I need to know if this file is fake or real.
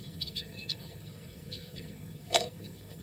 fake